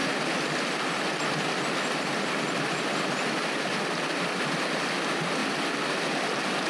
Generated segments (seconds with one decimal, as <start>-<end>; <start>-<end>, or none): 4.0-5.4; 6.2-6.7